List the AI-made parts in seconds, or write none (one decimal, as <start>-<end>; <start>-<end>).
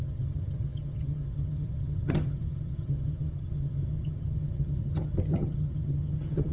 0.0-6.5